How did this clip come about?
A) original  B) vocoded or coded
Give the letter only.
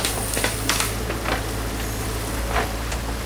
A